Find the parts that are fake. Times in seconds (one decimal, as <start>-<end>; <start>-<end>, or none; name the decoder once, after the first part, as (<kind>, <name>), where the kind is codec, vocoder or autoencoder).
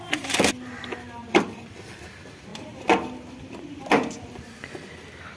none